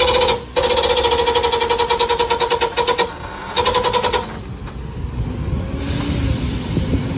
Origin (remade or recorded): recorded